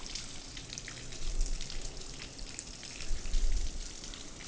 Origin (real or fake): real